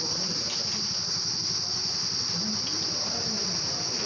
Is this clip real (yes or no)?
yes